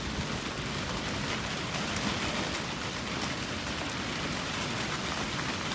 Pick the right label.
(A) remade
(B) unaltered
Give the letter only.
B